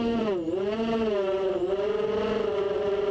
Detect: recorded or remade recorded